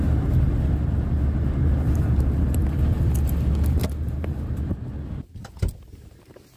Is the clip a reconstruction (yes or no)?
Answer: no